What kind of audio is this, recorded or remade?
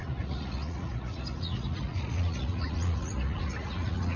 remade